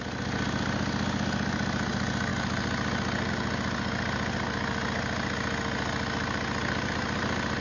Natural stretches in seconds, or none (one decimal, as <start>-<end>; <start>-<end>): 0.0-7.6